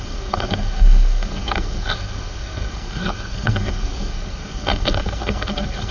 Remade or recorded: remade